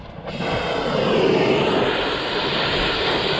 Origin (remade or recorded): recorded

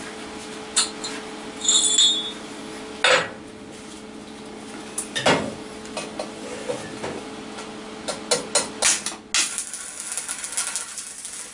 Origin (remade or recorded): recorded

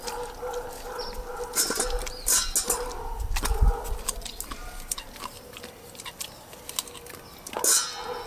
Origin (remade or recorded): recorded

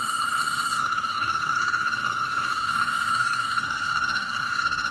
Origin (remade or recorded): remade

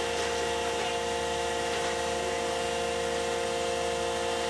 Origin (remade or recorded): recorded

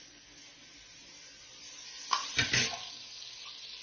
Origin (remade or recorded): recorded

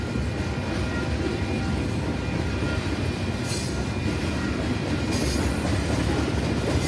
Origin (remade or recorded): recorded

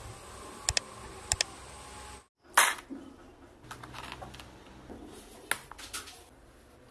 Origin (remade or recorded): recorded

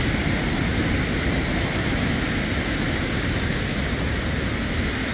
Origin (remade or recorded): recorded